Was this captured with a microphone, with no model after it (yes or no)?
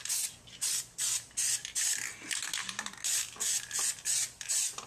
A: yes